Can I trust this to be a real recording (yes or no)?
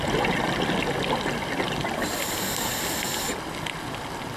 yes